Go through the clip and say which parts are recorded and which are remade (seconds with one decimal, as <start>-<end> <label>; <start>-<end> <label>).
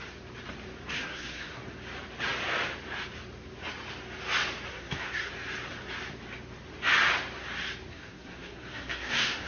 0.0-0.9 recorded; 0.9-1.6 remade; 1.6-4.7 recorded; 4.7-5.3 remade; 5.3-7.9 recorded; 7.9-9.5 remade